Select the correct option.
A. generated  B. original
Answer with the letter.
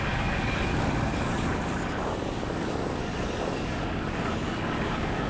A